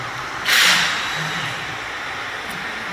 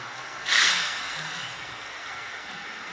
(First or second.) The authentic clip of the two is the first